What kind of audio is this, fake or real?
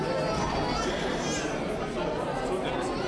real